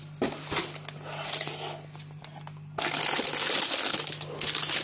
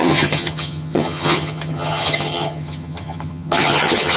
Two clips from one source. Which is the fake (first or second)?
second